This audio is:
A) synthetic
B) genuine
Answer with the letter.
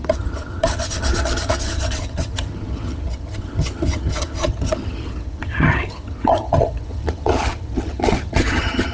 A